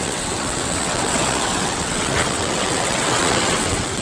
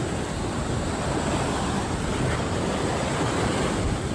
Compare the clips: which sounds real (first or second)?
second